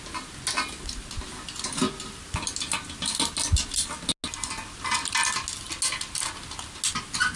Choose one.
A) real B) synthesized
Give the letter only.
A